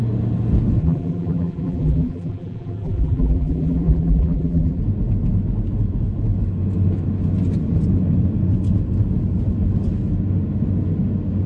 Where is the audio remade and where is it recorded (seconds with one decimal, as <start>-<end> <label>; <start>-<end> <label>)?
0.0-0.8 recorded; 0.8-4.8 remade; 4.8-11.5 recorded